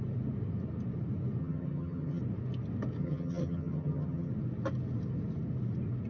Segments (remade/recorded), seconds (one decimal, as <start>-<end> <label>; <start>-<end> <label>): 0.0-1.4 recorded; 1.4-2.2 remade; 2.2-3.0 recorded; 3.0-4.3 remade; 4.3-6.1 recorded